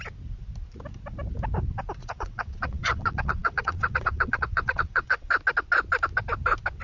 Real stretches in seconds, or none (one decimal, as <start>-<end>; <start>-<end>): 0.0-2.0; 5.3-6.8